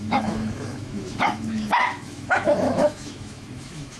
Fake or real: fake